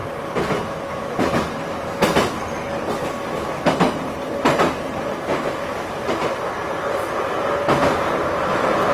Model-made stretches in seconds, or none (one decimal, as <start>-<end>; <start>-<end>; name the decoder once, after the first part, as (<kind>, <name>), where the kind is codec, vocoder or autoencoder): 5.3-6.2 (vocoder, BigVGAN v2)